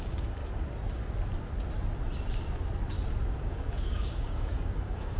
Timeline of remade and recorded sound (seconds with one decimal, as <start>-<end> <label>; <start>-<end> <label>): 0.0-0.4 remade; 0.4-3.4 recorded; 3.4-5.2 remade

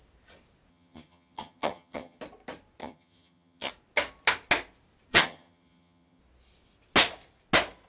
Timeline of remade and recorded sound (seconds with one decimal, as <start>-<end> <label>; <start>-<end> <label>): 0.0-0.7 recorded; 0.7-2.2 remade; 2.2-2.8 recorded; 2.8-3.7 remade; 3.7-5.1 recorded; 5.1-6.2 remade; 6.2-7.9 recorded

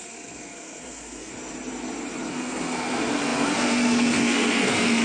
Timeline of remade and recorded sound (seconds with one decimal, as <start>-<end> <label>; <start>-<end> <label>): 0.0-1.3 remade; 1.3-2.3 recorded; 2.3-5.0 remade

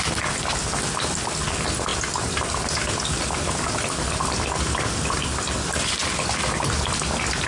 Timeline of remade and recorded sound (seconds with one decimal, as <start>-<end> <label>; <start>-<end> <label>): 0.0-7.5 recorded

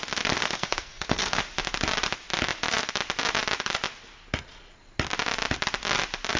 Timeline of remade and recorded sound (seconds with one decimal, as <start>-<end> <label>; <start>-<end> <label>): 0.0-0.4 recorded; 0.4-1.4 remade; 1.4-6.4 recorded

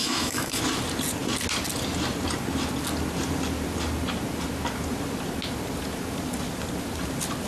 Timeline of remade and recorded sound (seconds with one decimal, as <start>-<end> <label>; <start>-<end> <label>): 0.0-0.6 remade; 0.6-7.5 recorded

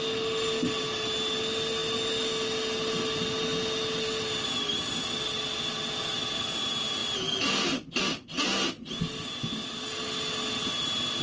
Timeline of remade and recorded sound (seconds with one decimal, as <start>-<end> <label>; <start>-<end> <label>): 0.0-11.2 recorded

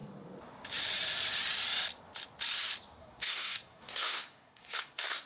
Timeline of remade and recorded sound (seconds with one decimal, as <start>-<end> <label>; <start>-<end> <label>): 0.0-3.0 recorded; 3.0-5.3 remade